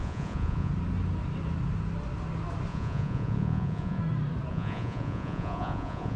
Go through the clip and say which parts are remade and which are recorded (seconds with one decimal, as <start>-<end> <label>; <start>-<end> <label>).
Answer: 0.0-0.7 remade; 0.7-2.7 recorded; 2.7-4.0 remade; 4.0-4.5 recorded; 4.5-6.2 remade